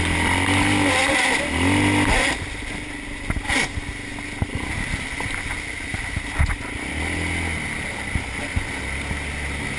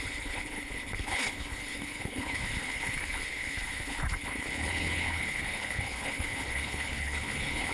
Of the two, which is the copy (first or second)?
second